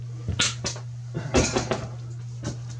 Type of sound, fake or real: real